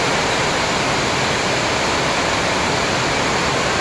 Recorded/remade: recorded